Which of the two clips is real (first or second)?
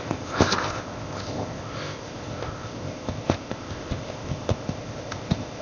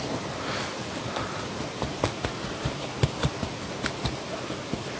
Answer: second